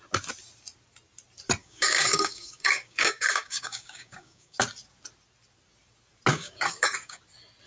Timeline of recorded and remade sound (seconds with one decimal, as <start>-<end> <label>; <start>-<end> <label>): 0.0-1.6 recorded; 1.6-4.6 remade; 4.6-6.3 recorded; 6.3-7.2 remade; 7.2-7.7 recorded